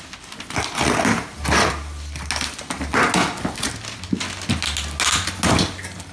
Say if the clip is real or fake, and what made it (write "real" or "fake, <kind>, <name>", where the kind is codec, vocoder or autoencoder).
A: real